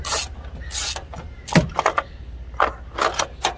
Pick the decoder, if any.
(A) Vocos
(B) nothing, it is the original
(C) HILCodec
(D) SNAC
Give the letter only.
B